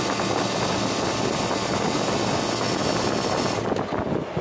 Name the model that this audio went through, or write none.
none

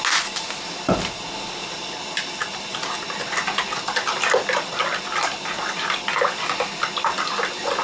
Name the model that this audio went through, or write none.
none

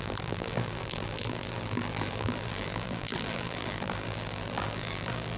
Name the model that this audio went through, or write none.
vocoder, BigVGAN v2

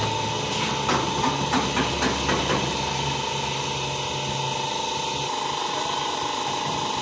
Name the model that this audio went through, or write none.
none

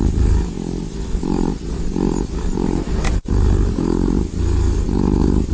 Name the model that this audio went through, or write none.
vocoder, BigVGAN v2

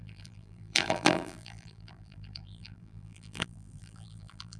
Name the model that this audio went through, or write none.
vocoder, BigVGAN v2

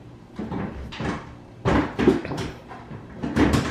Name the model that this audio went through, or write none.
vocoder, BigVGAN v2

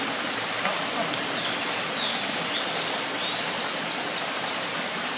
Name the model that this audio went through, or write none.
none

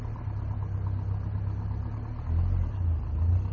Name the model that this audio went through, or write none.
none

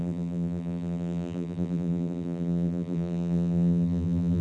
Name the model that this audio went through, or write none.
vocoder, BigVGAN v2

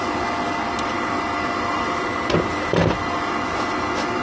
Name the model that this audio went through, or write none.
none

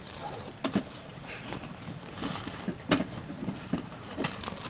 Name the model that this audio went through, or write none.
vocoder, BigVGAN v2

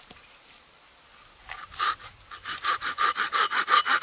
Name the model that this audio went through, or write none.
vocoder, BigVGAN v2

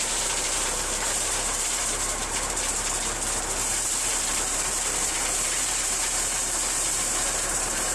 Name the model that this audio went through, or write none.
vocoder, BigVGAN v2